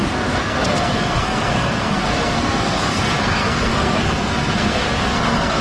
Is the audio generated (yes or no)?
yes